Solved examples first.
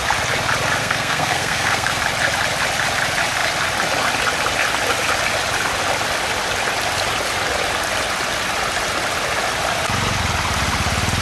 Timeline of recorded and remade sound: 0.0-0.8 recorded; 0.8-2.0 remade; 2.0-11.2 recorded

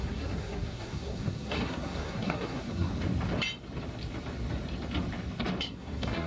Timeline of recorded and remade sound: 0.0-2.9 remade; 2.9-5.6 recorded; 5.6-6.3 remade

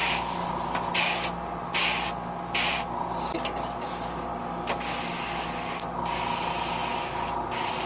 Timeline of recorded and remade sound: 0.0-7.9 recorded

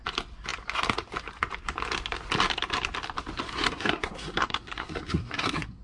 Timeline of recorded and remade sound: 0.0-3.5 recorded; 3.5-5.8 remade